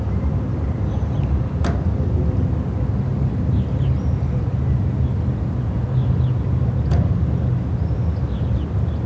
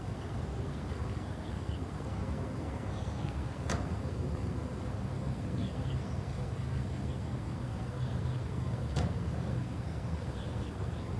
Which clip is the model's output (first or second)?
second